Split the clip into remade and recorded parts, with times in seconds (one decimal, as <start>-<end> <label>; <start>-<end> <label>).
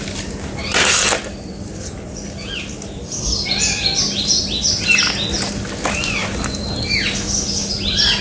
0.0-8.2 recorded